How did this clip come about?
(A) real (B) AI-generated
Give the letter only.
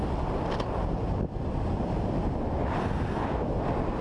A